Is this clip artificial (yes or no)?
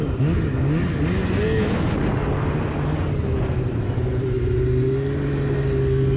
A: no